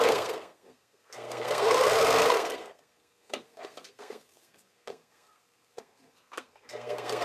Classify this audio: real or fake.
fake